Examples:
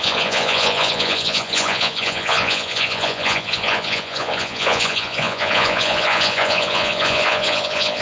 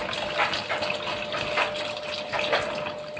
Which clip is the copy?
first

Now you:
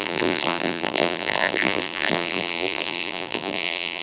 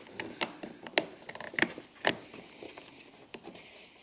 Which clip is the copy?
first